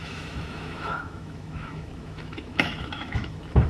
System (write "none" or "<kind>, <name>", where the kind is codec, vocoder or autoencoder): autoencoder, DAC-VAE